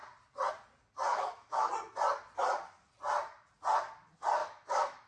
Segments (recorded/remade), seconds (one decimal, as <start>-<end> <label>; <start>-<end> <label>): 0.0-1.1 recorded; 1.1-1.7 remade; 1.7-4.4 recorded; 4.4-5.1 remade